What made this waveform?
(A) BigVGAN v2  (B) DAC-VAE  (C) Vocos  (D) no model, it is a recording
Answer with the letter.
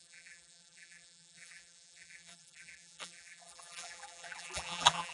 A